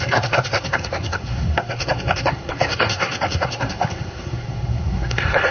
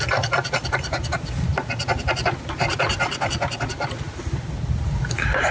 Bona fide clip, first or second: second